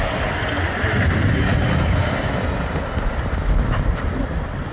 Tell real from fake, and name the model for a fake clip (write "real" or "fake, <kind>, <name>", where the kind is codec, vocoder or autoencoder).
real